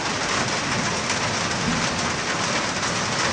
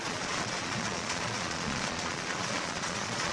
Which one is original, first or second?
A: first